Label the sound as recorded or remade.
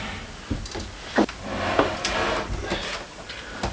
recorded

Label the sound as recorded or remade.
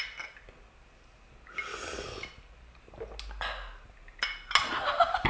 recorded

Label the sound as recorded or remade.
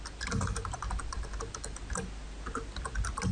recorded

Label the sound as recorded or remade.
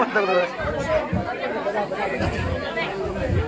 recorded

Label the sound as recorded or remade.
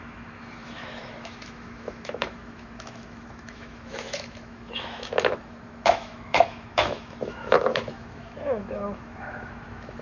remade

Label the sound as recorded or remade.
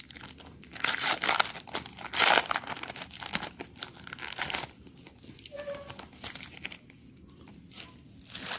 recorded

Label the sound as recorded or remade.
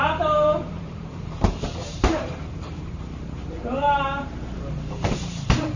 remade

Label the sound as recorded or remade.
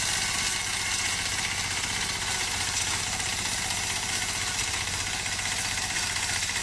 recorded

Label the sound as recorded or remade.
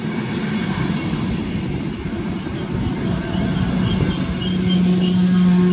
recorded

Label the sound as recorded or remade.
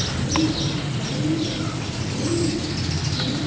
recorded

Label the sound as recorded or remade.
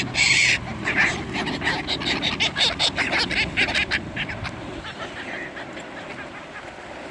recorded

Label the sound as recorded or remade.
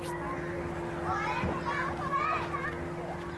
recorded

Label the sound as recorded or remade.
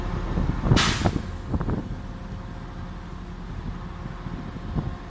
recorded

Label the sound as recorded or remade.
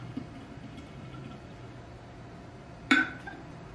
remade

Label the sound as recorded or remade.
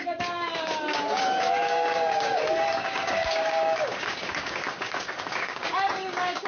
remade